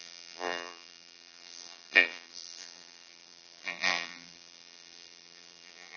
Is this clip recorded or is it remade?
remade